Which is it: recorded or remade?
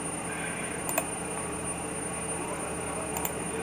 remade